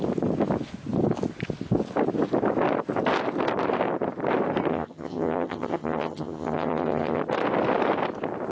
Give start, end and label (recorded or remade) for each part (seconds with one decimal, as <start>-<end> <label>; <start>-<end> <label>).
0.0-4.7 recorded; 4.7-7.2 remade; 7.2-8.5 recorded